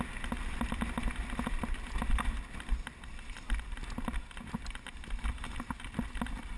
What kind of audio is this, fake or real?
real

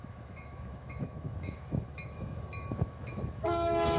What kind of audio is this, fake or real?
fake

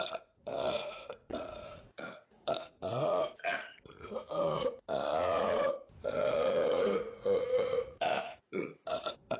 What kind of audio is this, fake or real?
fake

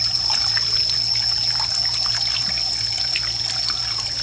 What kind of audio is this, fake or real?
real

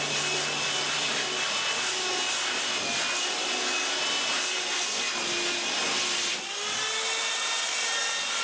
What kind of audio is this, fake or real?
real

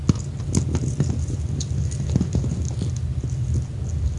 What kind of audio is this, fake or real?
real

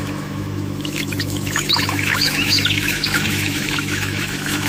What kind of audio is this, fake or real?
fake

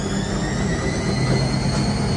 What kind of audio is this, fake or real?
real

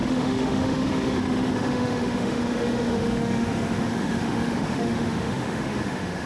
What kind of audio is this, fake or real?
fake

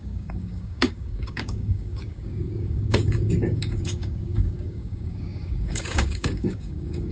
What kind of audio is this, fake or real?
fake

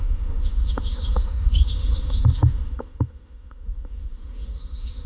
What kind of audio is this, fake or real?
fake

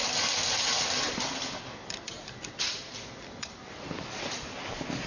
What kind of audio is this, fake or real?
real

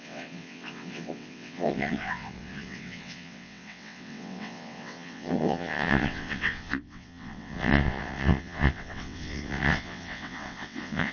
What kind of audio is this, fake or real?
fake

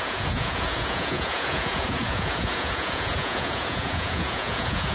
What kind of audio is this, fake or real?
fake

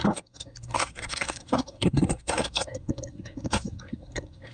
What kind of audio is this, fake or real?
fake